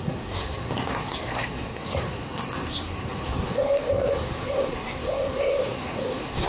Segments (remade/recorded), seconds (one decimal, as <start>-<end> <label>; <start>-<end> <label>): 0.0-6.5 remade